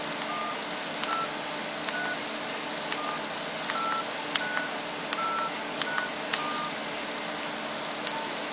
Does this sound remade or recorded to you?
recorded